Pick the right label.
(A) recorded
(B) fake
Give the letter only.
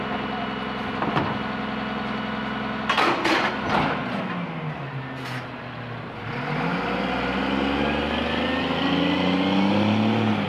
A